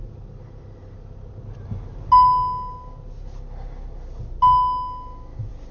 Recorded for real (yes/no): yes